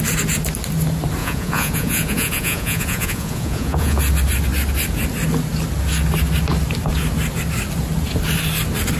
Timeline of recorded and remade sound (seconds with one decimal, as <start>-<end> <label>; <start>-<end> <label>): 0.0-1.2 recorded; 1.2-4.0 remade; 4.0-9.0 recorded